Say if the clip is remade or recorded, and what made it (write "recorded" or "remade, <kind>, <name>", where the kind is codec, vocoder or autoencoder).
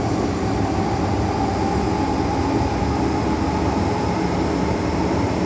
recorded